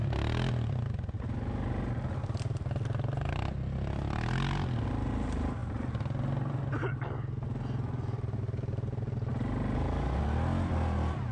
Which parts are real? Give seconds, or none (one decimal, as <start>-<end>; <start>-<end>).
0.0-11.3